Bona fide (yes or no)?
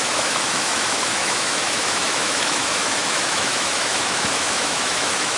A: no